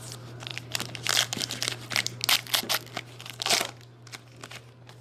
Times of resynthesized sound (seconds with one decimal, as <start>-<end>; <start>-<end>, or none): none